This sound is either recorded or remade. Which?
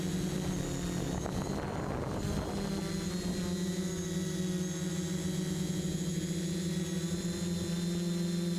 recorded